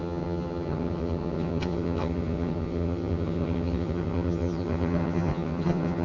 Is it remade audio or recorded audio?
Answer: remade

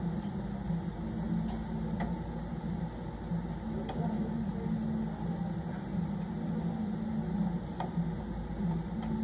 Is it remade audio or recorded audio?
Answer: recorded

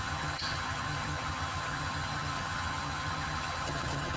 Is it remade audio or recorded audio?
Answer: remade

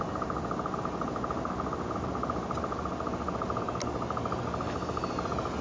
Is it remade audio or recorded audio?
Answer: recorded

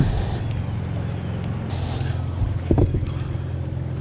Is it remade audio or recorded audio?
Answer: recorded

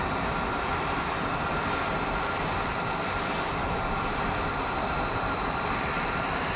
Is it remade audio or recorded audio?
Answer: recorded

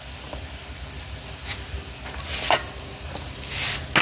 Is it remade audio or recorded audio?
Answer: recorded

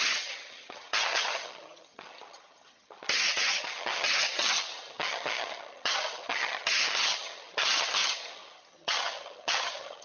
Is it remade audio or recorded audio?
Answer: remade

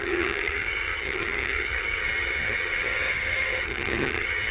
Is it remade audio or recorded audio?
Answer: remade